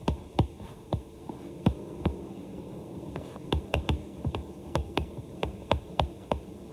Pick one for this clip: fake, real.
fake